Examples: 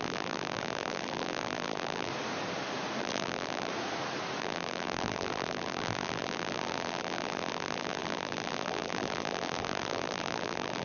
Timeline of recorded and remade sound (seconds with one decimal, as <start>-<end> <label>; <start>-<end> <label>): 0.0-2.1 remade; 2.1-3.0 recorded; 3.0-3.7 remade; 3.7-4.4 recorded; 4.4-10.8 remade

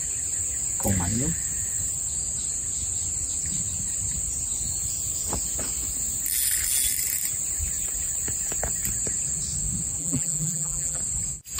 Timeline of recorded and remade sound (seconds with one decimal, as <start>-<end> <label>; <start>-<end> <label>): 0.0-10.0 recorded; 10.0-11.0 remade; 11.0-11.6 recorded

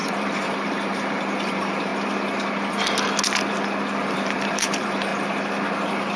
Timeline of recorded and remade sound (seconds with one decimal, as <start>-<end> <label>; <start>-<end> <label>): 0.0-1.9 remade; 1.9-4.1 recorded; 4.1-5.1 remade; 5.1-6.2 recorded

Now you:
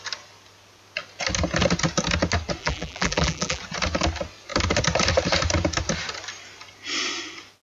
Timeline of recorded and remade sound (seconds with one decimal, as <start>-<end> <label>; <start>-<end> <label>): 0.0-2.6 recorded; 2.6-3.6 remade; 3.6-7.8 recorded

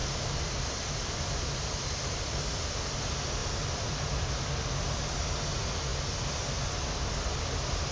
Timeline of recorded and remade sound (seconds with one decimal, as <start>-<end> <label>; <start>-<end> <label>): 0.0-2.8 remade; 2.8-3.4 recorded; 3.4-4.6 remade; 4.6-7.9 recorded

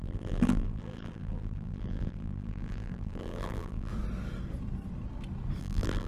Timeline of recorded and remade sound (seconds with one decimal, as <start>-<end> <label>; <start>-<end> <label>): 0.0-3.9 remade; 3.9-5.6 recorded; 5.6-6.1 remade

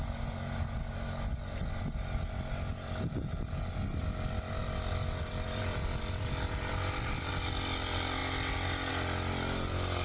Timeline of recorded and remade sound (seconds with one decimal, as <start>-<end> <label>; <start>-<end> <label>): 0.0-4.6 recorded; 4.6-7.3 remade; 7.3-10.0 recorded